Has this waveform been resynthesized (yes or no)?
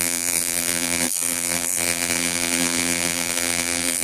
yes